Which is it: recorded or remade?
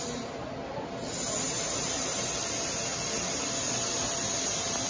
recorded